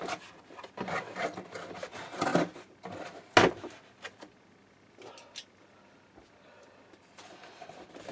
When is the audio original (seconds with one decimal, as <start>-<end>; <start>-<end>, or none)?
0.0-8.1